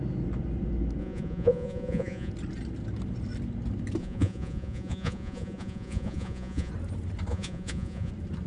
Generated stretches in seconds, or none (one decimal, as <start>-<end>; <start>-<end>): 1.0-2.3; 4.0-6.7; 7.3-8.1